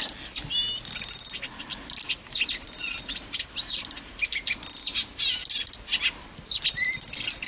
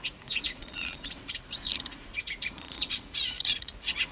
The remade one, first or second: second